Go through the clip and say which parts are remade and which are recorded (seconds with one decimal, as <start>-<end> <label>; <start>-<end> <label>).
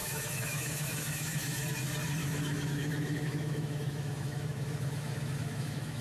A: 0.0-1.6 remade; 1.6-2.2 recorded; 2.2-6.0 remade